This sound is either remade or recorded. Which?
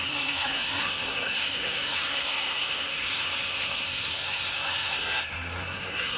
remade